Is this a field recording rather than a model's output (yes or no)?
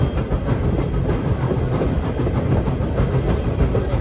yes